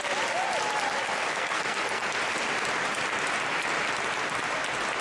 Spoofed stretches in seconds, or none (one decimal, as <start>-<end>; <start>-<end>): 1.3-2.1